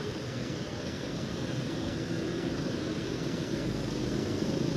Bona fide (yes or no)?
no